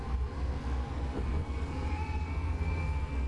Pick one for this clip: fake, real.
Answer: fake